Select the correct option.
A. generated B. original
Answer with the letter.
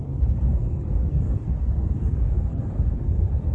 A